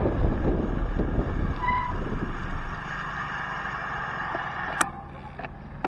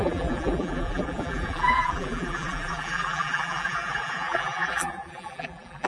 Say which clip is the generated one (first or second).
second